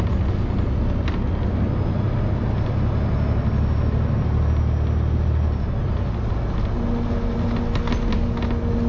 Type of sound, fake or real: real